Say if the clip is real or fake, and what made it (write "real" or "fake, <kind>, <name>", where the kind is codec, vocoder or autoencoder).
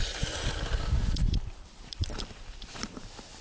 real